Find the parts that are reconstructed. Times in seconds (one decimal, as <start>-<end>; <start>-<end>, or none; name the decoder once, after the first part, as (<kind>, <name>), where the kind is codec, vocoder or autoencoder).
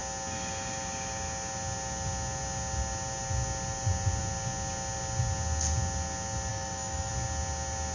6.5-7.1 (autoencoder, DAC-VAE)